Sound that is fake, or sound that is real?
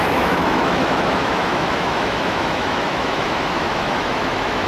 fake